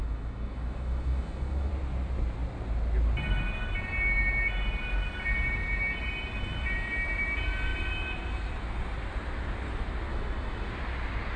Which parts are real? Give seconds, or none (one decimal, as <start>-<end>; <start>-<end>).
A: 1.7-10.1; 10.7-11.4